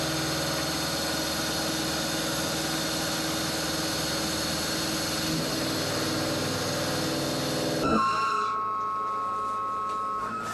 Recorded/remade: recorded